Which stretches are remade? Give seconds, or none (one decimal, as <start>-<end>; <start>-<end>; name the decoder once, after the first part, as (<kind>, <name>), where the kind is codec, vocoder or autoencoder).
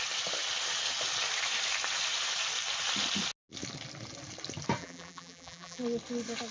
4.8-5.8 (vocoder, BigVGAN v2)